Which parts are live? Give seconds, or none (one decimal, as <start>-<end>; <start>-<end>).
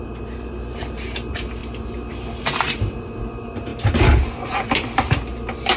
none